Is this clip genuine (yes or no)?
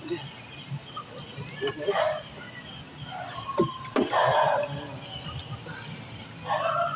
yes